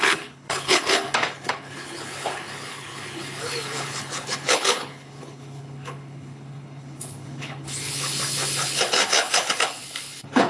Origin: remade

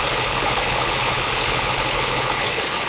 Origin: remade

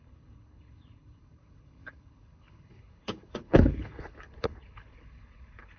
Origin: remade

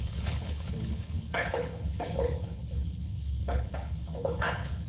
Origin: remade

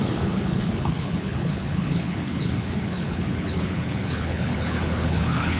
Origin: remade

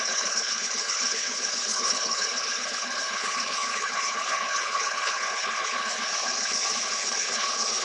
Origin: remade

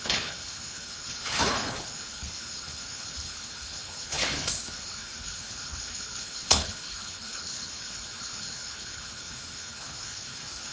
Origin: remade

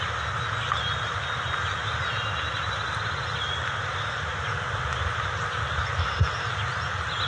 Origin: recorded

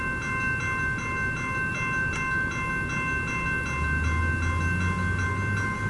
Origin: recorded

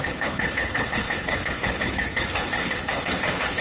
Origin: remade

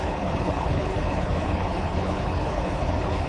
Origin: remade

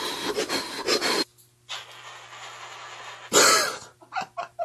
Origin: recorded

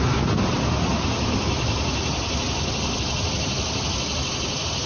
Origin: recorded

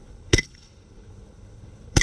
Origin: remade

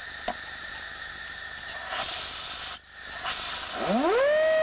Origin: recorded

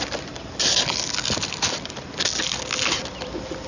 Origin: recorded